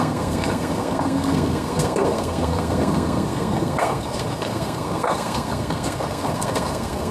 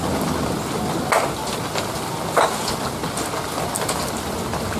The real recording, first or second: second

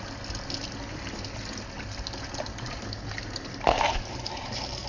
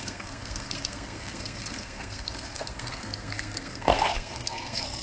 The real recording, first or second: first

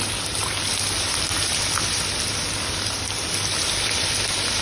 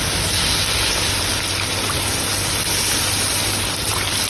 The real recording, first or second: second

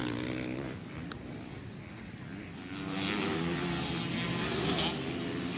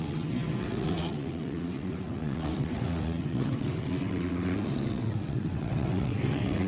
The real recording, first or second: first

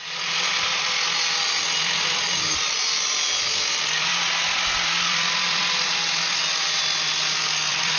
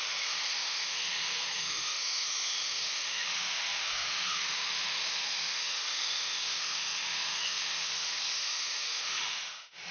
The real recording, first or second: first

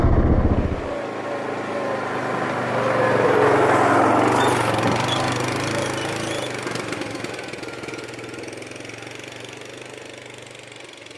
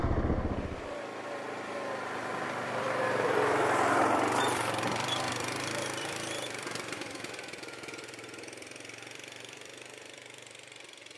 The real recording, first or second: first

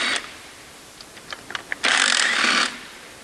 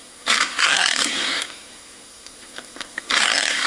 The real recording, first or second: first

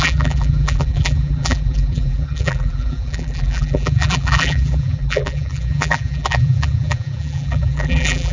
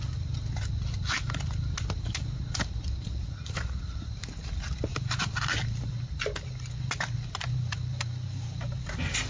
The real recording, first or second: second